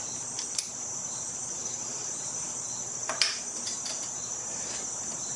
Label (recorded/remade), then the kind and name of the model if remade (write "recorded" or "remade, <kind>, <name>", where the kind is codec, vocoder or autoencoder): remade, vocoder, BigVGAN v2